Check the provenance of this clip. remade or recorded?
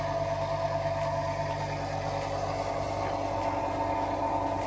recorded